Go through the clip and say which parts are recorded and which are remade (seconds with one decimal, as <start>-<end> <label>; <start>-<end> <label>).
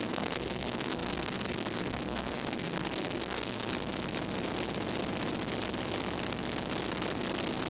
0.0-3.7 remade; 3.7-7.7 recorded